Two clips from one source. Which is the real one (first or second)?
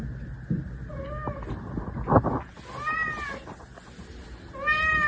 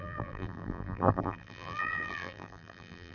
first